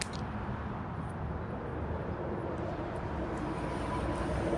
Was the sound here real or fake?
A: real